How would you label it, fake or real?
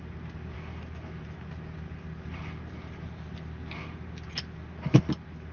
real